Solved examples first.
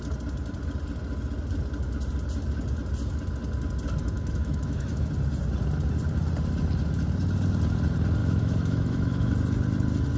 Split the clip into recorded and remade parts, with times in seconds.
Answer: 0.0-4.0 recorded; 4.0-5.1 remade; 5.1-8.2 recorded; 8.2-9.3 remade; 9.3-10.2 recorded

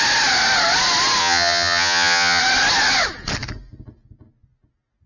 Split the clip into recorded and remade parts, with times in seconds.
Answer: 0.0-1.2 recorded; 1.2-2.4 remade; 2.4-5.1 recorded

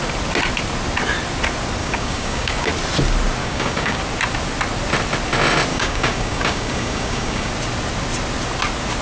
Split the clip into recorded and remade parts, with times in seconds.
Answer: 0.0-1.8 recorded; 1.8-2.7 remade; 2.7-3.4 recorded; 3.4-4.0 remade; 4.0-5.7 recorded; 5.7-7.5 remade; 7.5-9.0 recorded

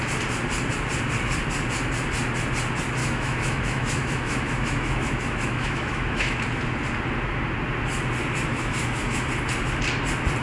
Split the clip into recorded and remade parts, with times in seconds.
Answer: 0.0-3.0 recorded; 3.0-6.4 remade; 6.4-8.5 recorded; 8.5-9.2 remade; 9.2-10.4 recorded